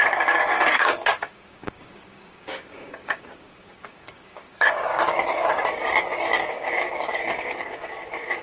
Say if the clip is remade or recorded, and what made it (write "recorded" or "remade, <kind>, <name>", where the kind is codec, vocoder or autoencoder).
remade, codec, DAC